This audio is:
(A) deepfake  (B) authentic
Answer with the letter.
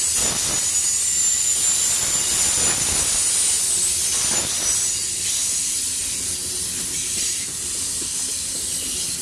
B